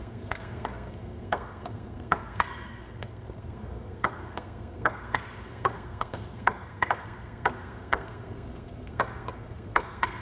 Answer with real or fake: fake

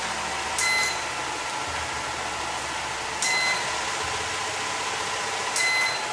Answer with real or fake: real